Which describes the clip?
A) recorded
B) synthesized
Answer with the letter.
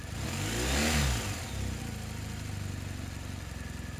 A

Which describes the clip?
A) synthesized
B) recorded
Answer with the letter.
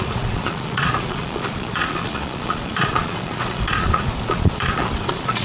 A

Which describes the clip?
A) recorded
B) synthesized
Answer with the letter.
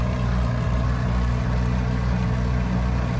A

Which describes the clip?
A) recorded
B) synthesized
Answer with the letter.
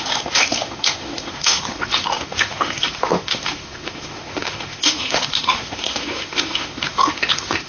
B